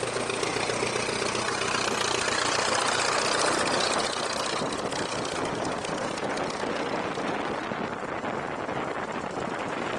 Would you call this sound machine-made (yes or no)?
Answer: no